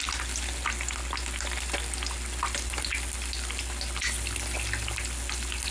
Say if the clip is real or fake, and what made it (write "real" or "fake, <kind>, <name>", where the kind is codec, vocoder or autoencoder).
real